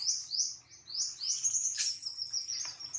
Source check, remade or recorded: recorded